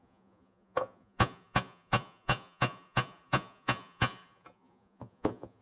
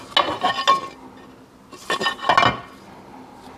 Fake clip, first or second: first